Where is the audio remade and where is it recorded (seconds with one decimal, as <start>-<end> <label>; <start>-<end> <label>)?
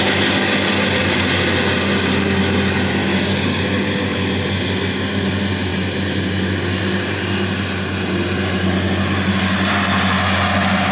0.0-3.0 recorded; 3.0-3.6 remade; 3.6-10.9 recorded